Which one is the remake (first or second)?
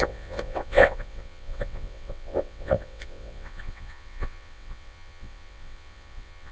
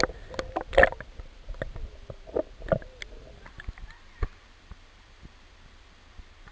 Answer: first